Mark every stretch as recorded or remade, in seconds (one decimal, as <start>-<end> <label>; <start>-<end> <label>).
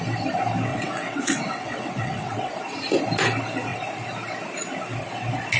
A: 0.0-0.7 recorded; 0.7-2.5 remade; 2.5-5.6 recorded